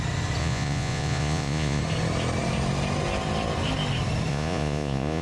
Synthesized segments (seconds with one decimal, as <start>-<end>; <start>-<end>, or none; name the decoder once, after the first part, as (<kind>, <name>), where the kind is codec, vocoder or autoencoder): 0.4-1.8 (vocoder, Vocos); 4.3-5.2